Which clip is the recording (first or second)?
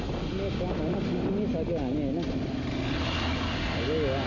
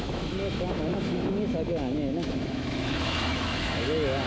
first